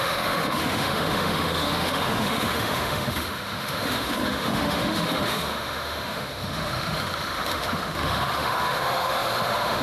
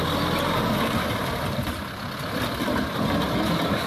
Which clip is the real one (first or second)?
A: second